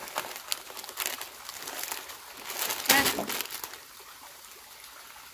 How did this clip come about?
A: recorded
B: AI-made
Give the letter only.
A